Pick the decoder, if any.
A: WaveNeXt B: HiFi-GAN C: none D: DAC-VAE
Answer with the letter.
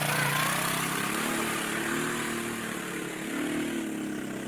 C